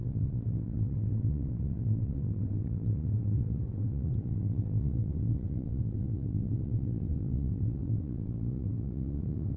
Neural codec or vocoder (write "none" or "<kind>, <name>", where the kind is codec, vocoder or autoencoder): vocoder, WaveNeXt